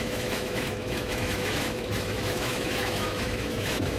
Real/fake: fake